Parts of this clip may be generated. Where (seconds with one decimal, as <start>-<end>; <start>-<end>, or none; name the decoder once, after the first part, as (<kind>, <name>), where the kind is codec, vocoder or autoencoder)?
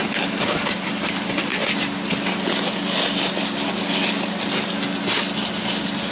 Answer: none